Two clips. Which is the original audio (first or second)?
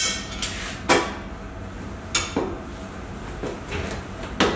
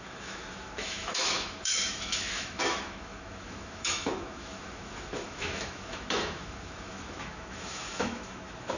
first